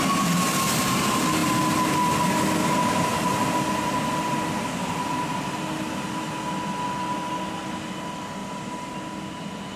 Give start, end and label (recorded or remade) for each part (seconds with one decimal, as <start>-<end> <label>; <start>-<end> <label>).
0.0-9.8 recorded